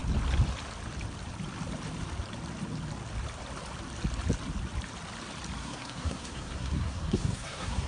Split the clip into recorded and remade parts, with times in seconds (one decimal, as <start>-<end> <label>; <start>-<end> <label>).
0.0-5.6 recorded; 5.6-7.9 remade